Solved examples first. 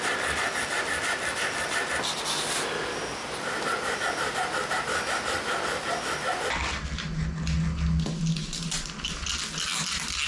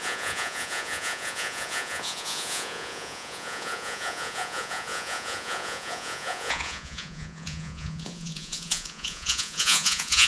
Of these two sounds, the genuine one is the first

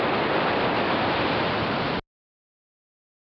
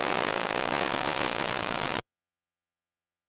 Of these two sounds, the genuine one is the first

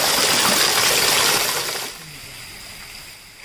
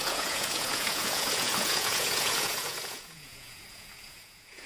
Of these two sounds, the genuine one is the first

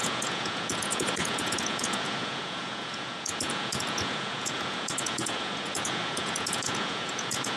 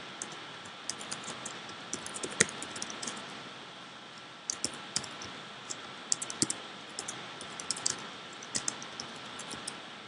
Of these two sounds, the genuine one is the second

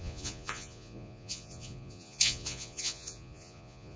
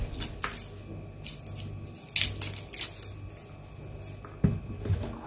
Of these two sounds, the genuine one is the second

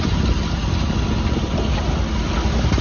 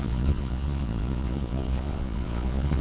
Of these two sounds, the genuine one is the first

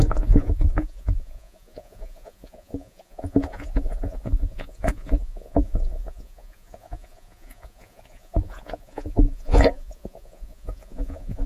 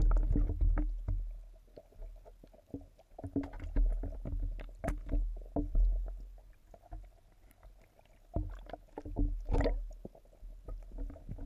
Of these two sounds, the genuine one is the second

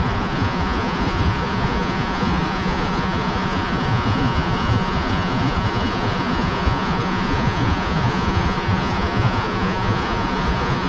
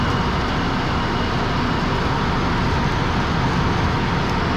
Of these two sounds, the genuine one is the second